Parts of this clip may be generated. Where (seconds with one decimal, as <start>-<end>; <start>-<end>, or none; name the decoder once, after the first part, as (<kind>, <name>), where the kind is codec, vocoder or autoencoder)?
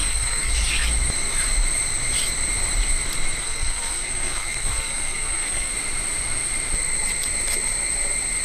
0.0-0.5 (codec, SNAC); 3.4-5.7